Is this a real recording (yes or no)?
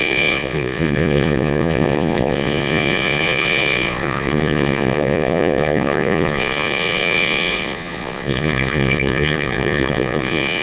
no